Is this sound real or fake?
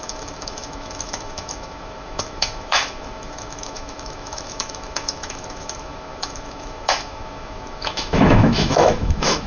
fake